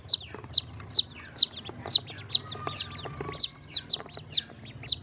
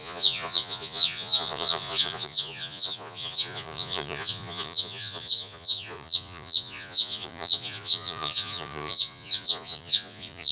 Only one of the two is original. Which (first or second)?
first